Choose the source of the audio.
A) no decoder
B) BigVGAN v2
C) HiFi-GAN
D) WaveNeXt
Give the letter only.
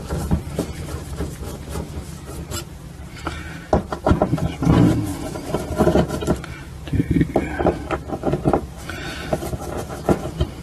B